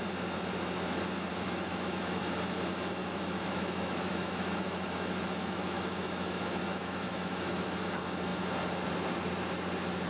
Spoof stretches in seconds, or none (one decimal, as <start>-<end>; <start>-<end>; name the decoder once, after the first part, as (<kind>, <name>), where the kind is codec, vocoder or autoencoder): 1.3-2.2 (autoencoder, DAC-VAE); 3.0-7.9